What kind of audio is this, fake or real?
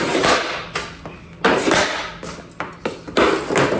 real